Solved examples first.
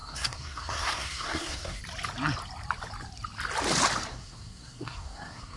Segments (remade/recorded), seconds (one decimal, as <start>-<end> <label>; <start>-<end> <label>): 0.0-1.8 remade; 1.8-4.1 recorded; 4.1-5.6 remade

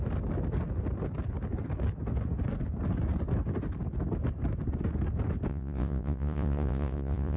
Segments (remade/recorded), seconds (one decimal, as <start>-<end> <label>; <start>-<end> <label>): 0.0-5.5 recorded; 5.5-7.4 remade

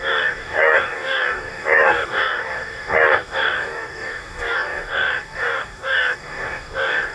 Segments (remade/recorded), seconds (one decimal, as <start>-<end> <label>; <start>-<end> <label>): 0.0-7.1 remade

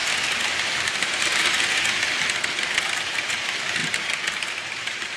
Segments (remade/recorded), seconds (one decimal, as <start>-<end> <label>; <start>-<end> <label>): 0.0-3.1 recorded; 3.1-5.2 remade

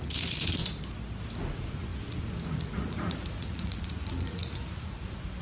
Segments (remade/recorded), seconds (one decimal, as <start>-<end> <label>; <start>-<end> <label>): 0.0-0.6 remade; 0.6-1.4 recorded; 1.4-5.4 remade

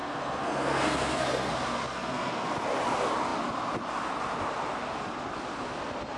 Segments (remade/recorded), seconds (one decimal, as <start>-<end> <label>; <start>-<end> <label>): 0.0-1.5 remade; 1.5-1.9 recorded; 1.9-2.5 remade; 2.5-6.2 recorded

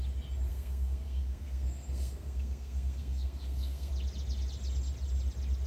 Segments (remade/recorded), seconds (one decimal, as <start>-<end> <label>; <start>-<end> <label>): 0.0-0.5 recorded; 0.5-3.9 remade; 3.9-5.7 recorded

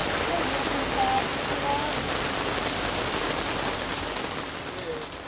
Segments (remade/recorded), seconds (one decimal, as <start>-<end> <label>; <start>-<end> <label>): 0.0-3.2 remade; 3.2-5.3 recorded